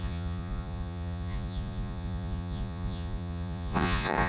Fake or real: fake